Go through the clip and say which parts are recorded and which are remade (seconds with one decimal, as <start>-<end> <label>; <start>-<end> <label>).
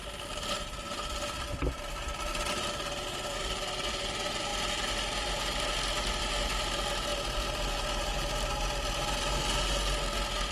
0.0-10.5 recorded